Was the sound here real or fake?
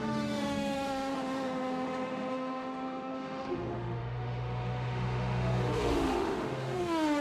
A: fake